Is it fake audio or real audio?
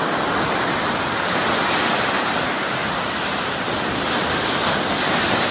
real